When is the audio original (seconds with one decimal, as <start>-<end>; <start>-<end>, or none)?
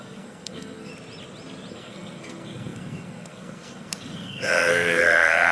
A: 0.9-1.7